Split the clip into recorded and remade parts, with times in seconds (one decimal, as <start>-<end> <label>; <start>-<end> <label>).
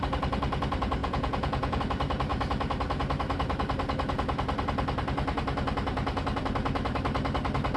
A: 0.0-1.0 recorded; 1.0-1.8 remade; 1.8-7.8 recorded